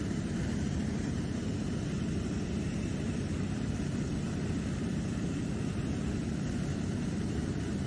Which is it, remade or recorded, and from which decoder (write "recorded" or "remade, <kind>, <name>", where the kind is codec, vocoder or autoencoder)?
remade, vocoder, BigVGAN v2